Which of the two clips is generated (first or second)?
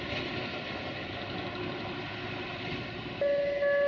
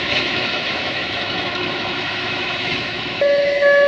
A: second